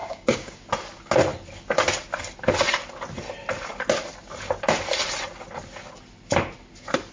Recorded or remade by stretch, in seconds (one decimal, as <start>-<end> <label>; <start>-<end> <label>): 0.0-0.6 remade; 0.6-7.1 recorded